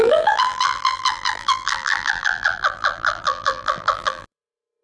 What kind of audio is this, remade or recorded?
remade